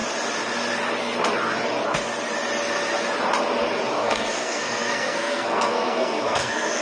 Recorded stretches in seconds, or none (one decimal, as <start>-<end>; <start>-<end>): 0.0-4.0